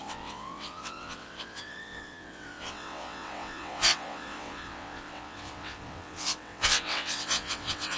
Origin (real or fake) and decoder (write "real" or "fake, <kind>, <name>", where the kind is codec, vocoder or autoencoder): fake, vocoder, WaveNeXt